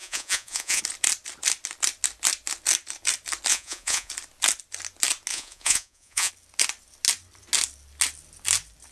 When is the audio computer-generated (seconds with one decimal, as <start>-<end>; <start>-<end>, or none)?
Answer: 0.0-0.8; 3.5-4.1; 5.3-6.3